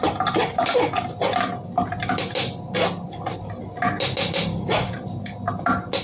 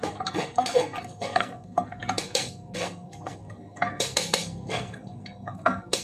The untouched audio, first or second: first